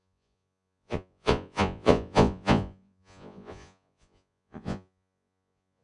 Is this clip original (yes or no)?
no